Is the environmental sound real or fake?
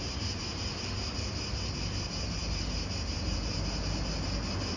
real